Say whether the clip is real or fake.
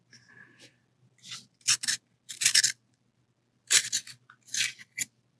real